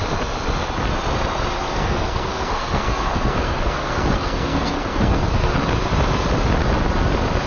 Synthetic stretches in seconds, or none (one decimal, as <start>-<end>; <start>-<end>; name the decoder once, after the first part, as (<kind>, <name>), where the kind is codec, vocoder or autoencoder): 1.6-5.6 (codec, SNAC)